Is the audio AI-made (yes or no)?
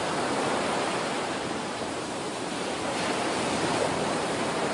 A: yes